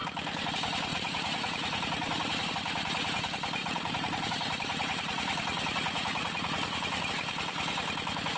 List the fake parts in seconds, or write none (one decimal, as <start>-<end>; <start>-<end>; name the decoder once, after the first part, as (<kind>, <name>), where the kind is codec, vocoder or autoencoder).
0.9-2.5 (vocoder, Vocos); 3.6-7.1